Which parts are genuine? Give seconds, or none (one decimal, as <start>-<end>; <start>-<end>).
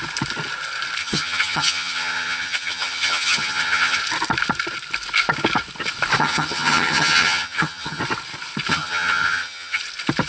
0.0-1.0; 4.0-6.2; 8.0-8.7; 9.8-10.3